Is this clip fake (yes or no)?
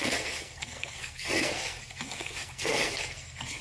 yes